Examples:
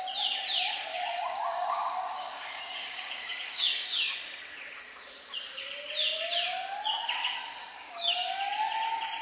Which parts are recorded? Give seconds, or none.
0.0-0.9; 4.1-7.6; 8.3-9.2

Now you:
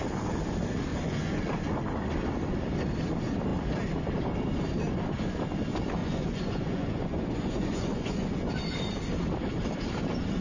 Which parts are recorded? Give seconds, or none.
0.0-0.9; 1.4-6.0; 8.5-10.4

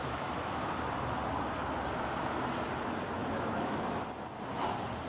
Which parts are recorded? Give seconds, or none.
0.7-3.2; 3.8-5.1

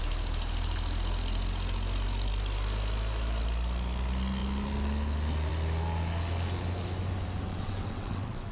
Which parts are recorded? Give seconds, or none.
0.0-7.5

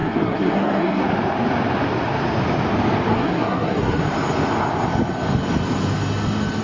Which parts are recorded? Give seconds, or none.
1.0-3.1; 4.0-6.6

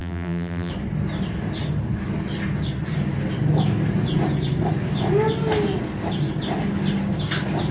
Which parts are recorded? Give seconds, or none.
0.7-7.7